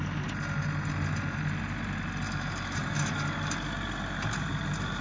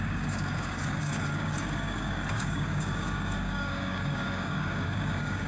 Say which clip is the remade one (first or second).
second